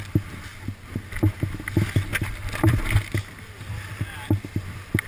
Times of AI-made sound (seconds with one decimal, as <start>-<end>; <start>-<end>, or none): 2.1-2.8